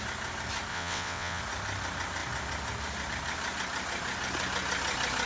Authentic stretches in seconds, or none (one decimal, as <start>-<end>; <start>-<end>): 0.0-0.7; 1.4-5.3